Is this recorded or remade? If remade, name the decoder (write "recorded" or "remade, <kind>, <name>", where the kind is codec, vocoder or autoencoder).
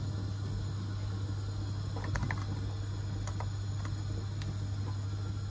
recorded